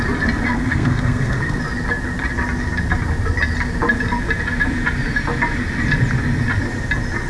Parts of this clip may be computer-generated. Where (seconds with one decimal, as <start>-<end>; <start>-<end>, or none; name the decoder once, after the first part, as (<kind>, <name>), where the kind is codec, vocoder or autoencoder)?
0.5-1.6 (codec, SNAC)